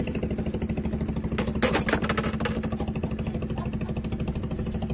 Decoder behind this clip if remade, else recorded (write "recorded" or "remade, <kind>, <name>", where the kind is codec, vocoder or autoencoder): recorded